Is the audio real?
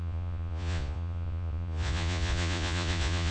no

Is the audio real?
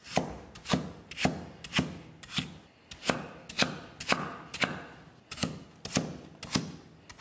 yes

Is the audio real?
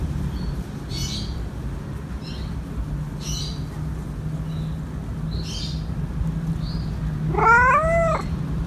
yes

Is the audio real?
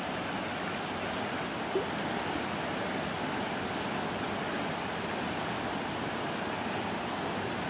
yes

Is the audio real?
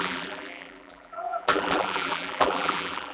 no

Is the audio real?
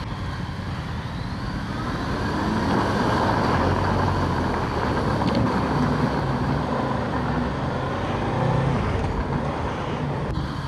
yes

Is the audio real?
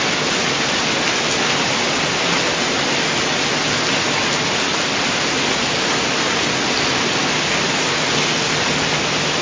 yes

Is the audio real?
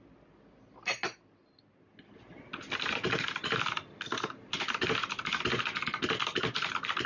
yes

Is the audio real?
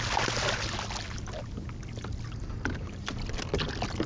yes